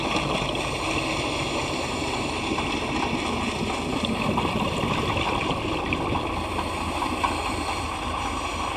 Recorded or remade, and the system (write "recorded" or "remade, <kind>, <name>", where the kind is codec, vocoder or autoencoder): recorded